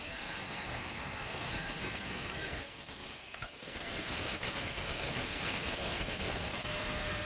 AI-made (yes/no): yes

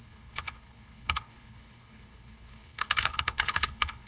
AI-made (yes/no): yes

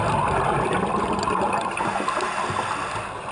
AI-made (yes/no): no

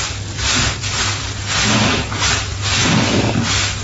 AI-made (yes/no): no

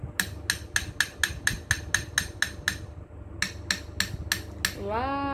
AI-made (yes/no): no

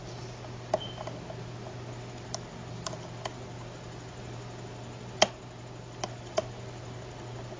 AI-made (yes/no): no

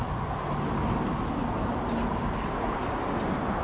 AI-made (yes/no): no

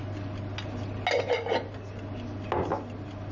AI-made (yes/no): no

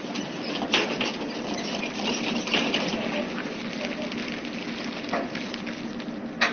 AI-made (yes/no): no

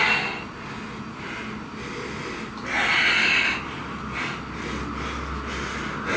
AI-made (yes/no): no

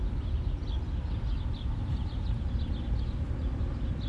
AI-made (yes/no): no